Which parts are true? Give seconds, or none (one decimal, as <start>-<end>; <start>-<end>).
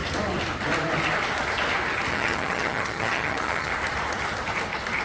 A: 0.0-2.1; 3.7-5.0